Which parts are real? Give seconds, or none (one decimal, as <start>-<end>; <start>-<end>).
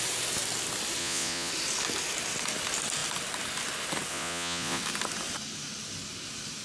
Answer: 0.0-1.0; 1.5-4.1; 4.8-6.6